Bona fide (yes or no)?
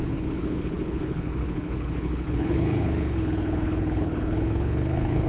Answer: no